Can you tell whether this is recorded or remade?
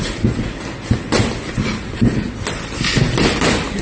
recorded